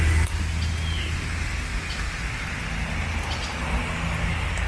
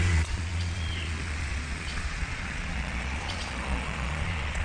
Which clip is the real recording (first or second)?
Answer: first